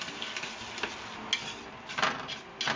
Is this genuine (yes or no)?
yes